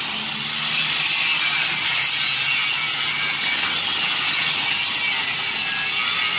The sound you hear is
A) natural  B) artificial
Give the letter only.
A